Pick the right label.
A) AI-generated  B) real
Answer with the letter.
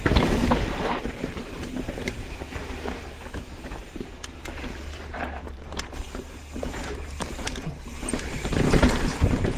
A